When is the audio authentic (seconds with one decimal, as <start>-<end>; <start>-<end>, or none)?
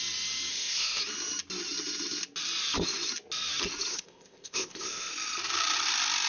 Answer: 0.0-0.5; 1.0-3.9; 5.1-6.3